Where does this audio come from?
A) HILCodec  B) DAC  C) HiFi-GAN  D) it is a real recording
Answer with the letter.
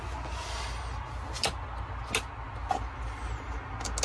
D